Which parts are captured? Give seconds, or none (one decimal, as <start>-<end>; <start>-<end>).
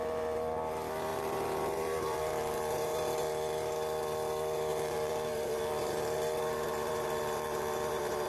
0.0-1.1; 3.3-4.7